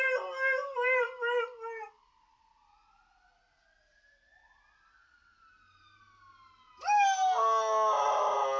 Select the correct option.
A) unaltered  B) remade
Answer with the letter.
A